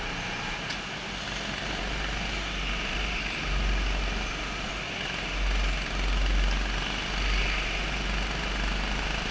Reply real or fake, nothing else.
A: real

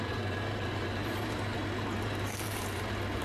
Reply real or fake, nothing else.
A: fake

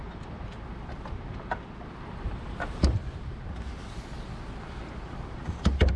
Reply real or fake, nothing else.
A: real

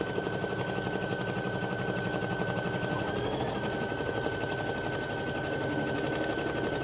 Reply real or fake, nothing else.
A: real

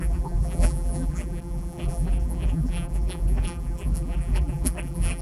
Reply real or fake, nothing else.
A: fake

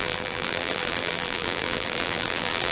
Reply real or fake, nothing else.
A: fake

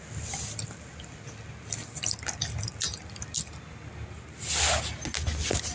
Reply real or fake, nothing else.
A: real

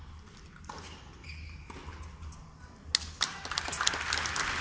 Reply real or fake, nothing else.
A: real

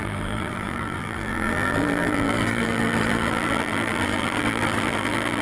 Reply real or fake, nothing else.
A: fake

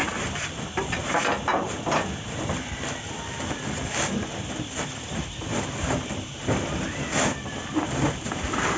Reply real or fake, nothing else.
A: fake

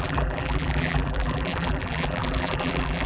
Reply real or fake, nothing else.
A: fake